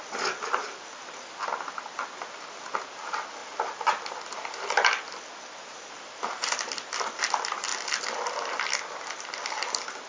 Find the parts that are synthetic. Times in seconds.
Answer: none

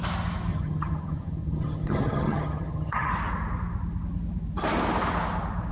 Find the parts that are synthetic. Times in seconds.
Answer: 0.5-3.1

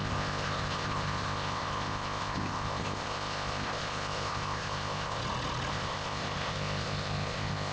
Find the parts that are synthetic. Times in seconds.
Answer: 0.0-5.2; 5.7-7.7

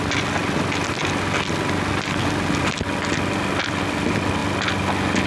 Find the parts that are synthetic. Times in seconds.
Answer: none

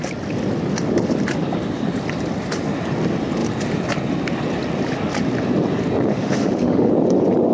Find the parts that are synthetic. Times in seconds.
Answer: 6.1-6.9